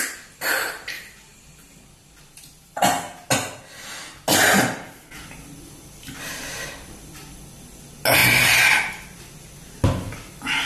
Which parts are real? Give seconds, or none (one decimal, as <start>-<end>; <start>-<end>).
0.0-10.7